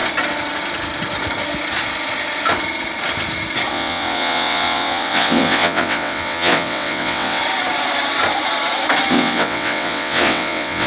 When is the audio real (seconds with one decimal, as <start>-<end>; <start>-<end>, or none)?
0.0-3.7; 7.4-9.1